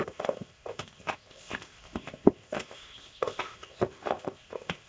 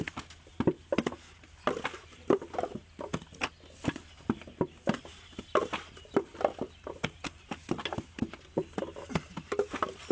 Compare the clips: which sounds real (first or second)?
second